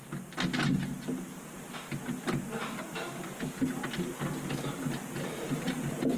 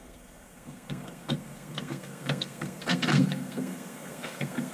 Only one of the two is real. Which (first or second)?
first